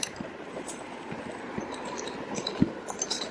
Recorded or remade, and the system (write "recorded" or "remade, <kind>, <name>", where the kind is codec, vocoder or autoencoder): recorded